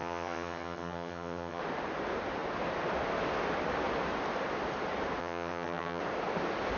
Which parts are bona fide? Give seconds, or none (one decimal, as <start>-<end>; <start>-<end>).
1.6-5.2; 6.0-6.8